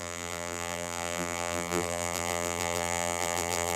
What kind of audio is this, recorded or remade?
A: remade